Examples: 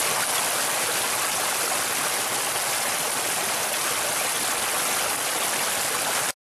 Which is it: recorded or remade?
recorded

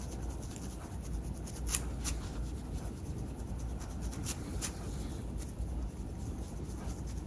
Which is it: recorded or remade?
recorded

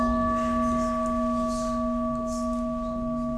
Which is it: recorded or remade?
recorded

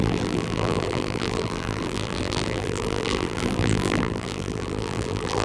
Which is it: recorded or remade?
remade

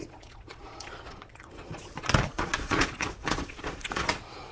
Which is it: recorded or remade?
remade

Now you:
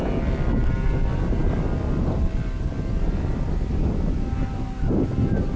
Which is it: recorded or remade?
recorded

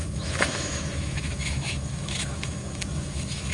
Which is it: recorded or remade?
remade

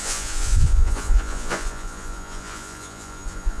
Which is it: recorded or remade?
remade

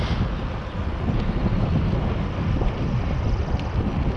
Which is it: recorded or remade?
recorded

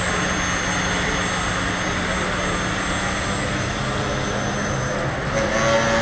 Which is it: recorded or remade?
recorded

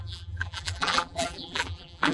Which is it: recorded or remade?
remade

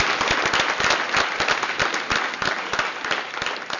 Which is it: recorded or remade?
recorded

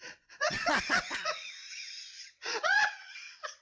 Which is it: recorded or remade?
remade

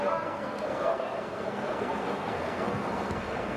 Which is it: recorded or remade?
remade